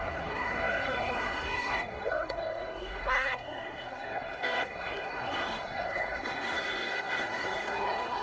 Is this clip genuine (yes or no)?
no